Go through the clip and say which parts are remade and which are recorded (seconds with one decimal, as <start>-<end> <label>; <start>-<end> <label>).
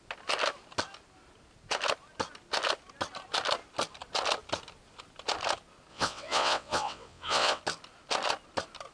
0.0-5.9 recorded; 5.9-7.6 remade; 7.6-8.9 recorded